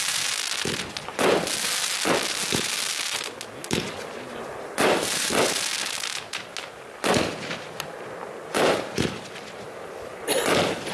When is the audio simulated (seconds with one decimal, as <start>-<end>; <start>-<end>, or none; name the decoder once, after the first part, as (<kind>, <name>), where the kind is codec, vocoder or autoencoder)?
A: none